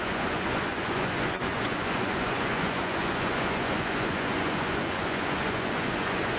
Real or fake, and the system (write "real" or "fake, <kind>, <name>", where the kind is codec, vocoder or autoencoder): fake, vocoder, Vocos